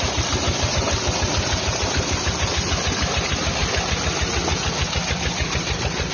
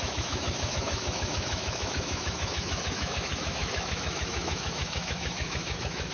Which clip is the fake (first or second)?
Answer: second